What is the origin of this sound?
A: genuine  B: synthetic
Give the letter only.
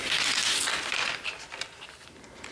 A